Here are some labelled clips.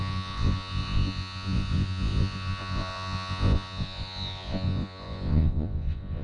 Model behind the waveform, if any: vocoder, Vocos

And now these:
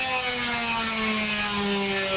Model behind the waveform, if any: none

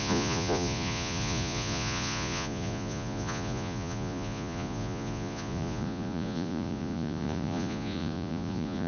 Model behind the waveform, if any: vocoder, Vocos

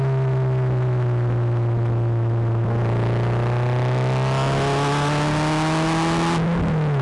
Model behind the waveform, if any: none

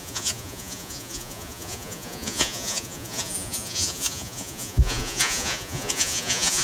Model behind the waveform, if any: vocoder, Vocos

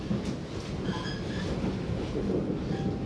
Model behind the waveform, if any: none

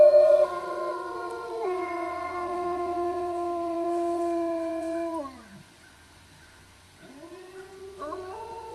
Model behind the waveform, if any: vocoder, Vocos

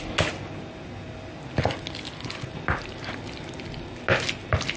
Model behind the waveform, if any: none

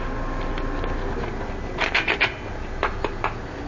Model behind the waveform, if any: none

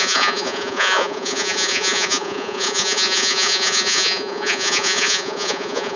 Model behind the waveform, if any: vocoder, Vocos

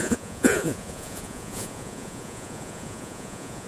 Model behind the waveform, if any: vocoder, Vocos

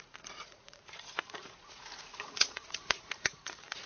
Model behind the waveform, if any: vocoder, Vocos